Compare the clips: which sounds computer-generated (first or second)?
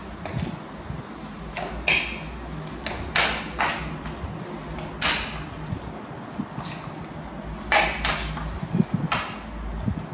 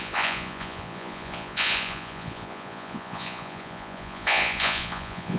second